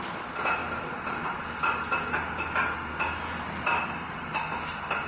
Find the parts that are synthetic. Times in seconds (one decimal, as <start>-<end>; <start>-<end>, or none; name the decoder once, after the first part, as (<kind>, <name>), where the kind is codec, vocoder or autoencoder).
none